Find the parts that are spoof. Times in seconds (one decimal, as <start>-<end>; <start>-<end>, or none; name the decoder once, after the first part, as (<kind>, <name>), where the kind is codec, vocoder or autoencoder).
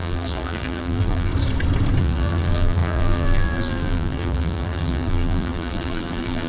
0.0-1.3 (vocoder, BigVGAN v2); 2.0-6.5